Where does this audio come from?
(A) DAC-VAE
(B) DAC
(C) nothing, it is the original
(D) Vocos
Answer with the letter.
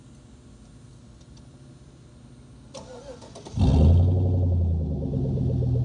C